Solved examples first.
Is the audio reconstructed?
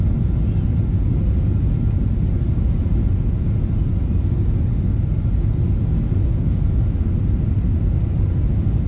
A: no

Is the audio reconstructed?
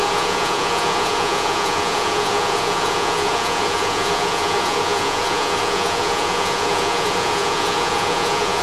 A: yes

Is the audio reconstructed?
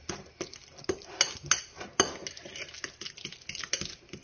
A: no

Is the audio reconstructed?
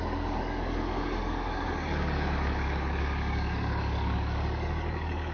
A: yes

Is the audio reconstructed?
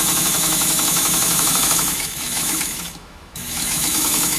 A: yes